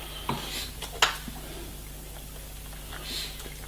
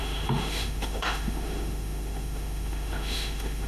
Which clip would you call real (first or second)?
first